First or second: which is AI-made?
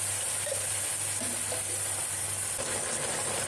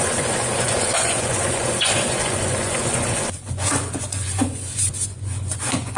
second